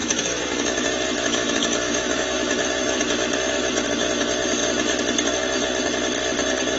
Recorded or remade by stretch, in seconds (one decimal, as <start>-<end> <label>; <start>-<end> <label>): 0.0-3.0 remade; 3.0-6.8 recorded